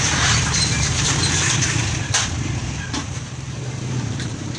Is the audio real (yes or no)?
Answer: no